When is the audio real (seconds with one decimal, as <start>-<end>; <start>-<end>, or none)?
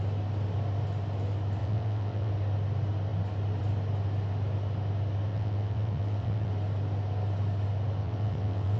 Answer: 0.0-1.6; 2.3-5.3; 6.5-8.0